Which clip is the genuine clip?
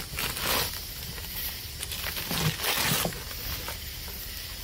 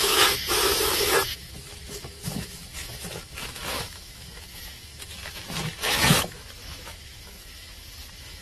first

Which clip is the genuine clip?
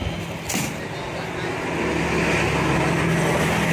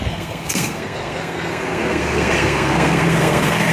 first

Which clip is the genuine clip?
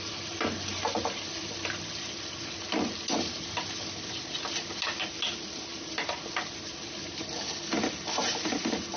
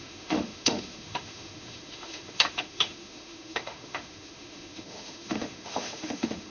first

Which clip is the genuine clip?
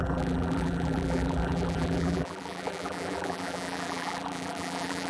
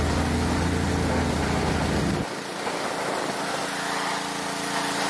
second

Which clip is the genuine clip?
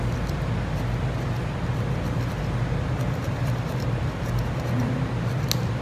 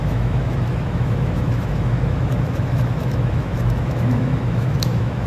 first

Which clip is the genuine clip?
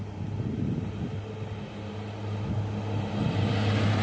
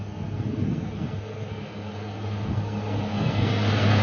first